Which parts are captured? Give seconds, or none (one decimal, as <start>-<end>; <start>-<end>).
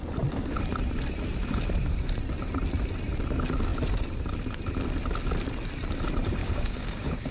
0.0-6.4